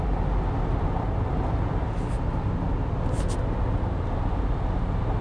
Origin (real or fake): real